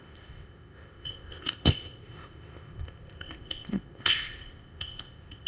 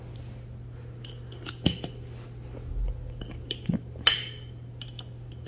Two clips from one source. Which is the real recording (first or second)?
second